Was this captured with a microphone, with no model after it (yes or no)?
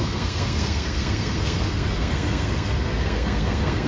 no